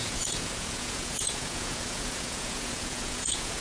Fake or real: fake